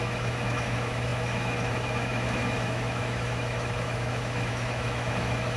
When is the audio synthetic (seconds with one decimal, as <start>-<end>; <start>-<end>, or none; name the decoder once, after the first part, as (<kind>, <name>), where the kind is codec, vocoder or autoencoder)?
0.0-5.6 (autoencoder, DAC-VAE)